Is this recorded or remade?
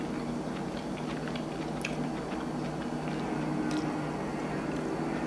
recorded